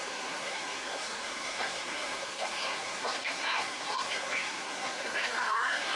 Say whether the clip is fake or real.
fake